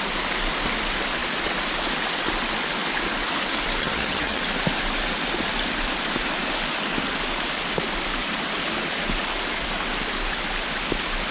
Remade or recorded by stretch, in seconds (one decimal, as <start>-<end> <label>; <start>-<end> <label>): 0.0-3.8 recorded; 3.8-4.4 remade; 4.4-11.3 recorded